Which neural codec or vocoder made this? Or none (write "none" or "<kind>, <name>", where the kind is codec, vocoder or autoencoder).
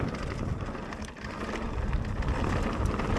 none